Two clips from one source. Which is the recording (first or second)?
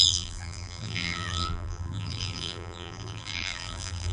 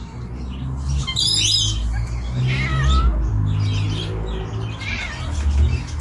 second